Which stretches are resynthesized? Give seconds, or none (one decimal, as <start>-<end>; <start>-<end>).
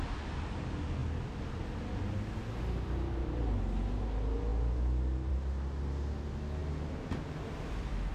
none